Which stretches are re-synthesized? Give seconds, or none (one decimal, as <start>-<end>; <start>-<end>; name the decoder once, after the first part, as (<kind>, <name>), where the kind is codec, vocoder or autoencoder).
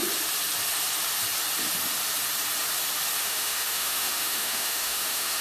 3.2-5.4 (autoencoder, DAC-VAE)